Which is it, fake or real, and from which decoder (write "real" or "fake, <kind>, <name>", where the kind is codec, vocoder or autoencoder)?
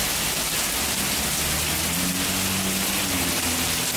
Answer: real